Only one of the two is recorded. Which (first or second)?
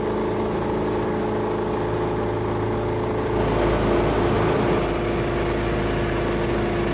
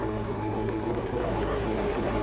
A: first